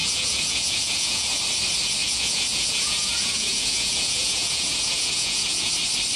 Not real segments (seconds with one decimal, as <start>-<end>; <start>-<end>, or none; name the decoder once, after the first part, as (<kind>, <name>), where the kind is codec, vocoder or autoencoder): 0.0-1.4 (vocoder, Vocos); 2.0-5.7